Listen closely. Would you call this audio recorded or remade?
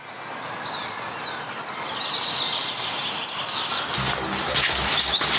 recorded